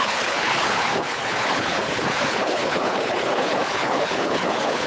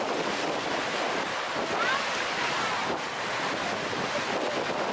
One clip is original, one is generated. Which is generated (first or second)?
first